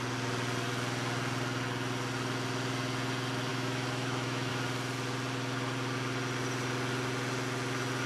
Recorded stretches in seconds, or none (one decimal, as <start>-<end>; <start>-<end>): 0.0-3.5; 4.5-8.1